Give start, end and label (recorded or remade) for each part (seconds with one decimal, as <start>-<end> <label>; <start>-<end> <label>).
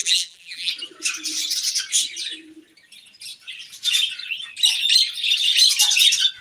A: 0.0-0.7 remade; 0.7-6.4 recorded